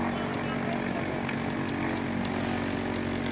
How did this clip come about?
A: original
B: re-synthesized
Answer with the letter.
A